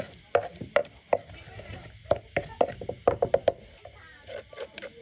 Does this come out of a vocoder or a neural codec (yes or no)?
no